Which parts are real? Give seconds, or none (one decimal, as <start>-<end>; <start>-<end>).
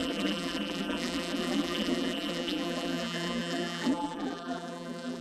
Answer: none